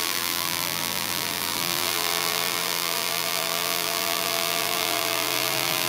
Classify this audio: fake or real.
fake